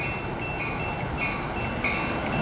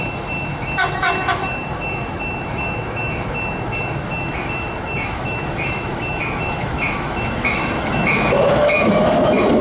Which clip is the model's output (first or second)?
second